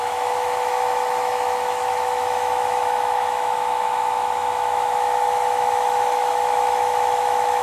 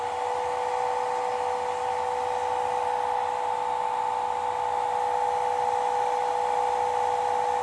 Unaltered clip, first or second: second